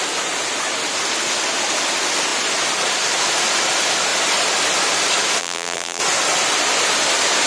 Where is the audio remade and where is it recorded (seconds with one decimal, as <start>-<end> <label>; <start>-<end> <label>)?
0.0-5.4 recorded; 5.4-6.0 remade; 6.0-7.5 recorded